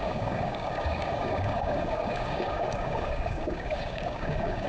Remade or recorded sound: remade